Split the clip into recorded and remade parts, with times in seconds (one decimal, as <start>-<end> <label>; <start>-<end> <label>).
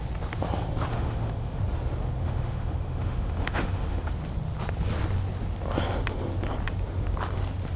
0.0-0.9 recorded; 0.9-1.6 remade; 1.6-2.2 recorded; 2.2-4.1 remade; 4.1-7.8 recorded